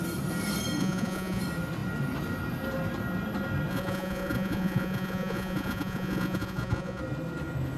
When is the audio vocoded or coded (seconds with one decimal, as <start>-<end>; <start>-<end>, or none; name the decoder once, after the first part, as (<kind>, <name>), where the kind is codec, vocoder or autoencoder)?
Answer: 0.8-1.4 (vocoder, Vocos); 3.7-7.0